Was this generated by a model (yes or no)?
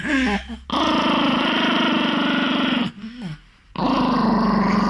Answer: no